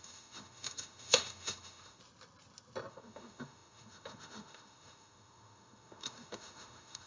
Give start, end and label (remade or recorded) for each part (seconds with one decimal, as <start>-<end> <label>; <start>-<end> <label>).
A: 0.0-2.0 remade; 2.0-2.9 recorded; 2.9-7.1 remade